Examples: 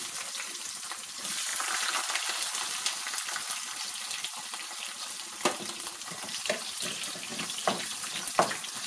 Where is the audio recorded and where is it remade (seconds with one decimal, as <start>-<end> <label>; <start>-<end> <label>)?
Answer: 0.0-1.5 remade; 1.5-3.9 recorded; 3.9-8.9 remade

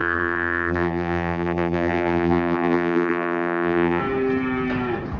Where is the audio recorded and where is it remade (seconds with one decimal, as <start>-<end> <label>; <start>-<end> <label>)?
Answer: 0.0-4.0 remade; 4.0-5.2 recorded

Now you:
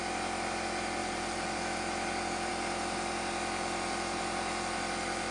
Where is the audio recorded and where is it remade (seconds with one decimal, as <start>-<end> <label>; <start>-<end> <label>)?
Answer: 0.0-1.0 recorded; 1.0-1.5 remade; 1.5-5.3 recorded